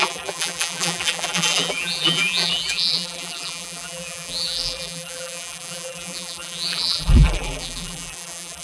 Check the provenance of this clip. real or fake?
fake